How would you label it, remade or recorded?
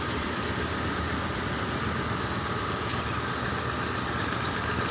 recorded